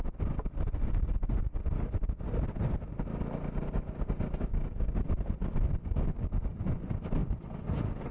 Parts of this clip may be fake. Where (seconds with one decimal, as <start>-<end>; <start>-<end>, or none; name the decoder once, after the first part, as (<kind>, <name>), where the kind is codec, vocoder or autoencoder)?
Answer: none